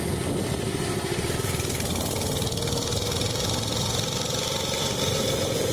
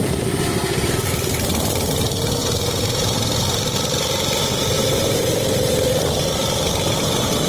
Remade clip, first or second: second